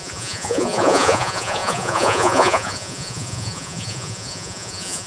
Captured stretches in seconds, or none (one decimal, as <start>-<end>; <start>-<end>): none